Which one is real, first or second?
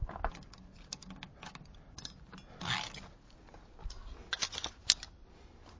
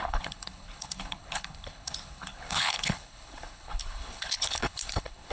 first